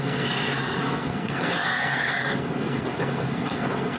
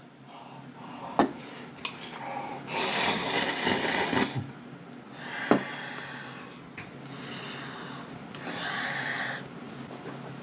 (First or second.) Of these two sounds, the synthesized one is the first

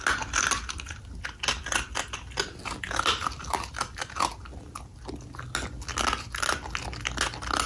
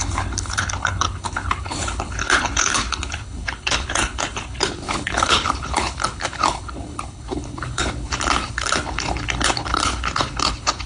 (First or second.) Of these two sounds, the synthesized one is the second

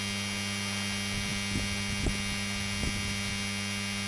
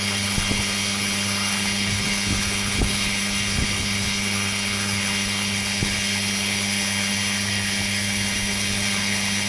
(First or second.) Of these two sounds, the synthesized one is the second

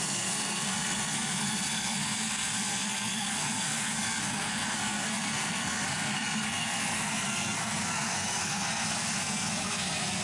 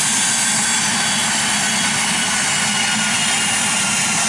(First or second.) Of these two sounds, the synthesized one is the first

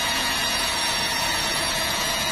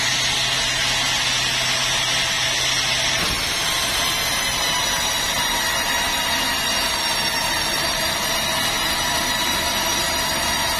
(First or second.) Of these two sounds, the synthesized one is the first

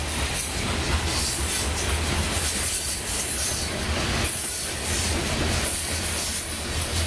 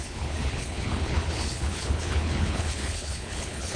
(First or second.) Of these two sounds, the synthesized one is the second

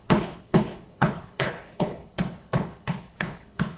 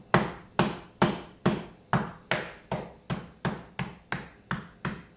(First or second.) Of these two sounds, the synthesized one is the first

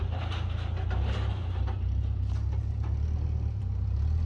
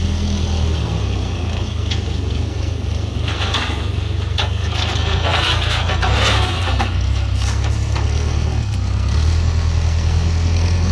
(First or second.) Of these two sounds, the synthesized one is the second